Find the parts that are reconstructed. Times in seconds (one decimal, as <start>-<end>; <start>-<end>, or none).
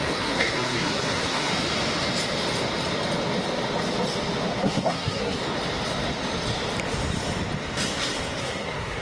0.0-1.5; 4.6-5.4; 8.4-9.0